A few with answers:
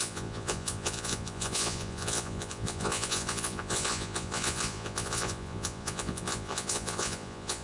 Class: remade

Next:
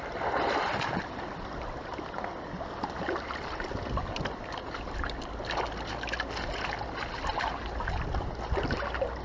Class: recorded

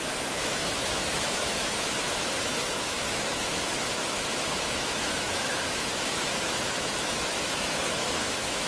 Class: remade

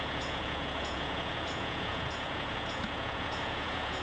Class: remade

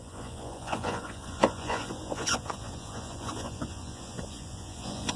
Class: remade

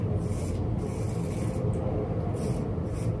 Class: recorded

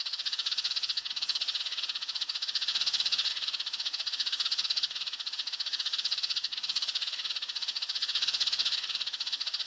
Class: remade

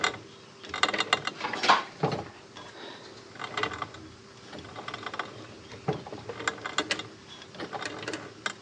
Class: recorded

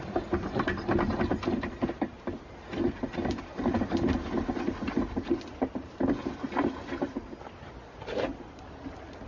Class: recorded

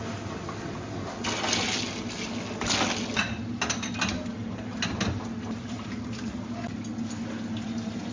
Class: recorded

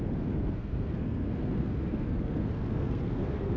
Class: remade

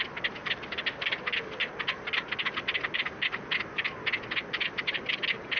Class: recorded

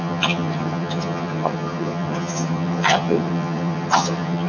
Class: remade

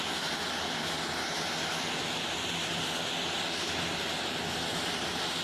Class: recorded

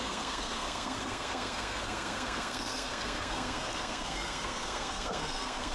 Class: remade